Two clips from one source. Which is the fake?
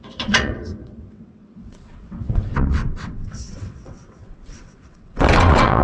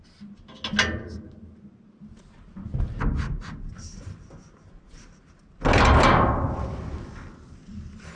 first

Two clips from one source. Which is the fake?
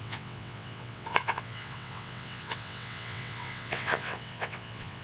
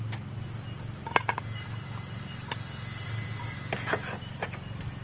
first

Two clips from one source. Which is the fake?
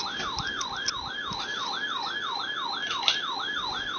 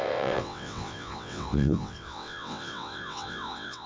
second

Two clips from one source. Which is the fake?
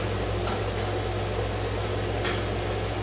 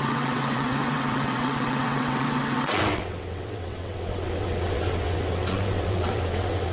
second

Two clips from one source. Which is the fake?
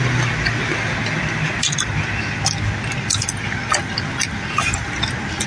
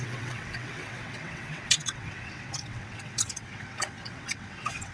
second